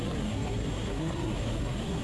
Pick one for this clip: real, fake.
fake